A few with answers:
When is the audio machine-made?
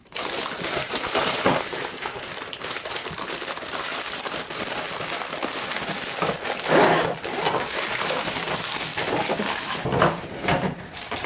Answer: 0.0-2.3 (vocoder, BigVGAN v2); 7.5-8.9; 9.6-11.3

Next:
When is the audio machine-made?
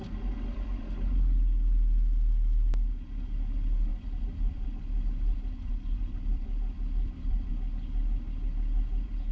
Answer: 3.9-7.5 (vocoder, BigVGAN v2)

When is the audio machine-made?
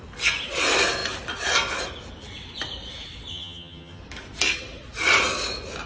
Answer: 3.3-4.0 (vocoder, HiFi-GAN)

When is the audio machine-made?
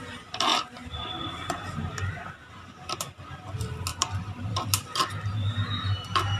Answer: 3.9-4.5 (vocoder, BigVGAN v2)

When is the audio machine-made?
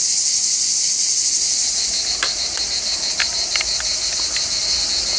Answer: none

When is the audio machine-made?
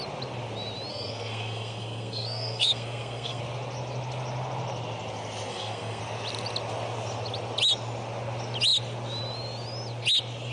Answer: 0.9-3.4 (codec, SNAC); 5.5-6.0